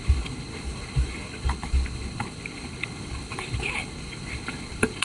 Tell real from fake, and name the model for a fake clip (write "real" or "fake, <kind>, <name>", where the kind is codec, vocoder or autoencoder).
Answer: fake, codec, HILCodec